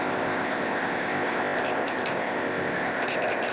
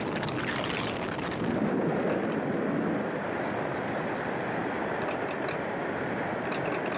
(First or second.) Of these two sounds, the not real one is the first